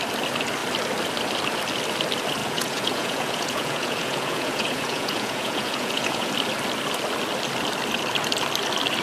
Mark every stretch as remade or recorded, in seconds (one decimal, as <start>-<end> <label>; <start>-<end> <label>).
0.0-2.4 recorded; 2.4-6.3 remade; 6.3-9.0 recorded